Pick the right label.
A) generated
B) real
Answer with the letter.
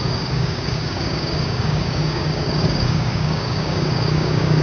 A